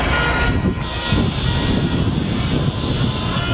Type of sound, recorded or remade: recorded